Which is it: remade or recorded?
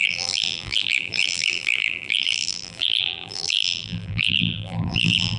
remade